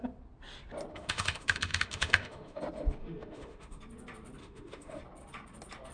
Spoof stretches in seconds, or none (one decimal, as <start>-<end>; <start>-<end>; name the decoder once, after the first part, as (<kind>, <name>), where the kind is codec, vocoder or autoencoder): 0.9-2.6 (autoencoder, DAC-VAE); 3.0-3.8; 4.4-5.0